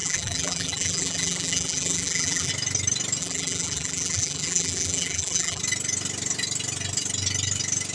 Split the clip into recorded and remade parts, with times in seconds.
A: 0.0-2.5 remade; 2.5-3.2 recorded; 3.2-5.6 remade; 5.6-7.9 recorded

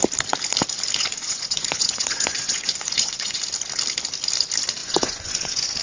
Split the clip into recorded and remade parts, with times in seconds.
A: 0.0-1.0 recorded; 1.0-3.4 remade; 3.4-4.8 recorded; 4.8-5.8 remade

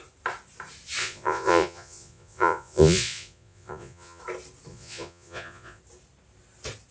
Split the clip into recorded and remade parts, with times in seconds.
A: 0.0-1.0 recorded; 1.0-4.2 remade; 4.2-4.7 recorded; 4.7-5.8 remade; 5.8-6.9 recorded

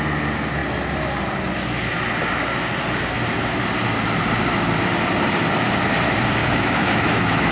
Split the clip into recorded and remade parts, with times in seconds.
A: 0.0-6.4 recorded; 6.4-7.5 remade